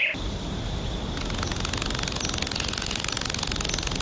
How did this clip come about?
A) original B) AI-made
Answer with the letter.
A